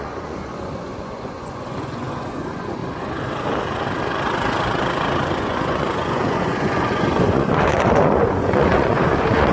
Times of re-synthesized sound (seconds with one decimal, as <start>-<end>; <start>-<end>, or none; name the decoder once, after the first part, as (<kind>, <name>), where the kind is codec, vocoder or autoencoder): 0.0-2.8 (vocoder, Vocos); 5.4-9.5